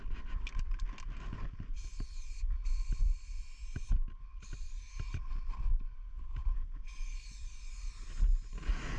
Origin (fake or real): real